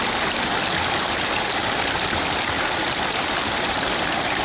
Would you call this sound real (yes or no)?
no